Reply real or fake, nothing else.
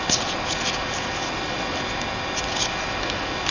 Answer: real